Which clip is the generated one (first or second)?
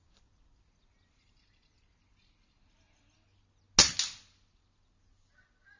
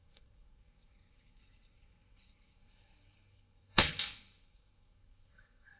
second